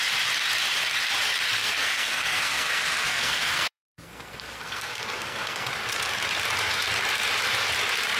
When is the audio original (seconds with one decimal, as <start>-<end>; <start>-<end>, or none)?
0.0-1.6; 5.7-8.2